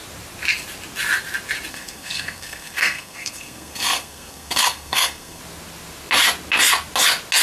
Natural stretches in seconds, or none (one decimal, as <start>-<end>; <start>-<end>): 0.0-1.7; 5.4-7.4